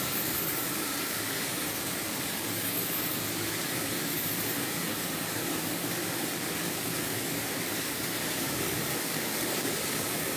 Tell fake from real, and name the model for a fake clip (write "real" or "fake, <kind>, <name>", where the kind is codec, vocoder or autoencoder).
fake, codec, DAC